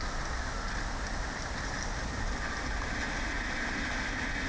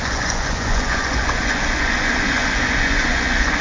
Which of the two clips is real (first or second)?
first